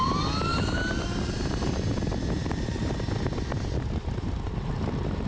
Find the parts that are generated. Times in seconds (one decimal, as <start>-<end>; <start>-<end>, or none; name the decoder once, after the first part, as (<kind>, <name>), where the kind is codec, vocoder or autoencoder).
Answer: 0.5-1.9 (vocoder, BigVGAN v2); 2.4-4.7